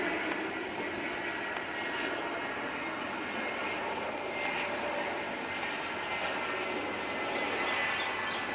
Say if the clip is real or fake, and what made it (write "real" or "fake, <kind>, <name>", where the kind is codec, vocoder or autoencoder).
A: real